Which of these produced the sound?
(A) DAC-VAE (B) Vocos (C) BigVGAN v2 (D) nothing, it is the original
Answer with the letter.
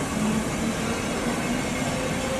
D